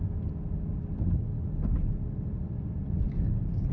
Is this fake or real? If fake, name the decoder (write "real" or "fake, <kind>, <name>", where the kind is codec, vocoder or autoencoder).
real